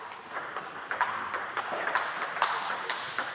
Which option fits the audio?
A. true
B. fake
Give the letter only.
B